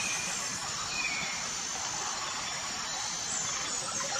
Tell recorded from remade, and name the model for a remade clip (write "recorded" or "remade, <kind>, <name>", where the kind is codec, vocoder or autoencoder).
recorded